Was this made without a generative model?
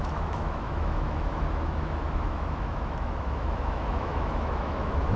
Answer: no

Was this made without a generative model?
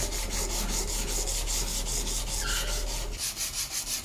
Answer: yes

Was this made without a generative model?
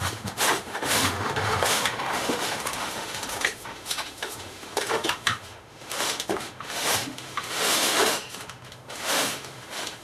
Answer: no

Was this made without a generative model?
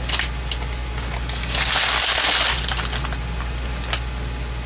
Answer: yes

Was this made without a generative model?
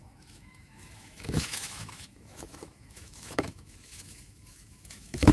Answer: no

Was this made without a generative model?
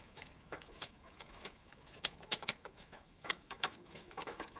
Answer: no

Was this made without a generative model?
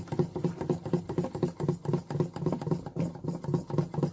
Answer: yes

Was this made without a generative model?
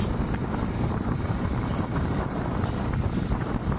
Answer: yes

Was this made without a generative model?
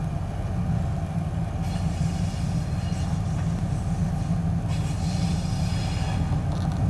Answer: yes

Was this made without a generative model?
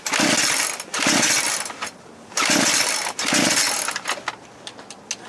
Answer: yes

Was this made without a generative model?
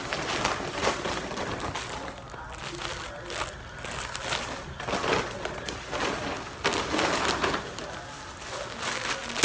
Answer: yes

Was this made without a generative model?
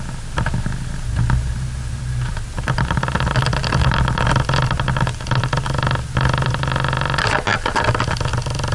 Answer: yes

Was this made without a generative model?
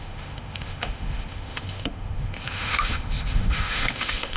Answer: no